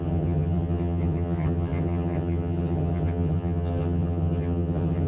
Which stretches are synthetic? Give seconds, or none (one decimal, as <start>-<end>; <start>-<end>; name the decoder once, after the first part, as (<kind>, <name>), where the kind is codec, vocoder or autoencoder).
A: 0.0-5.1 (vocoder, HiFi-GAN)